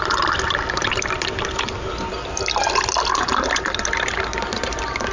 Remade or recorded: recorded